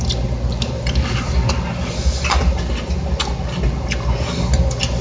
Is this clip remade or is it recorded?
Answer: recorded